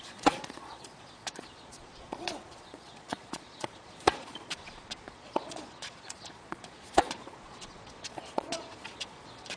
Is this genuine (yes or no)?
no